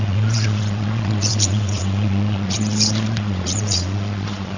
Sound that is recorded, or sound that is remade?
remade